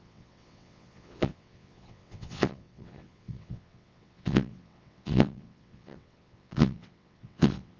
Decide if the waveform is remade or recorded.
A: remade